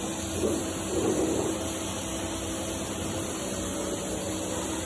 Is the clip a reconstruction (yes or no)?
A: no